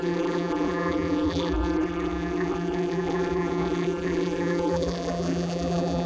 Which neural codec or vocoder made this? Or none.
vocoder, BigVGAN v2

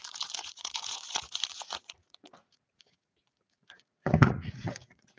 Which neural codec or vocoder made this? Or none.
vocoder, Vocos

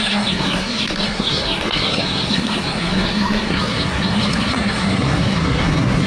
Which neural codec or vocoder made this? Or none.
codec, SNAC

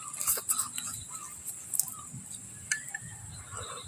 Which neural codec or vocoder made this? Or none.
none